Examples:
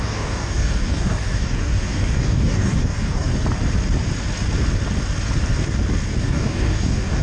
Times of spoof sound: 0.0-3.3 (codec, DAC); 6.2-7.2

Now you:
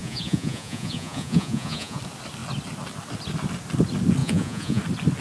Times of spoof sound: 0.0-2.0 (vocoder, Vocos); 4.2-4.8

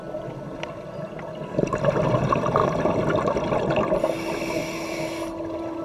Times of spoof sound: none

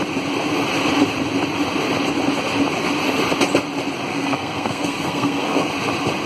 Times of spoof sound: 4.1-5.7 (codec, SNAC)

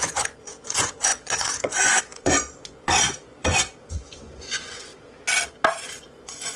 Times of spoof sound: 0.0-4.9 (vocoder, Vocos); 5.8-6.6